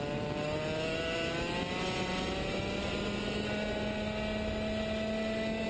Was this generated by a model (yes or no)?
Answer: no